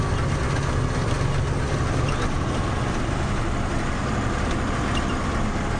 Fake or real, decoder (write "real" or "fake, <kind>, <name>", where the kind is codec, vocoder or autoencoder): real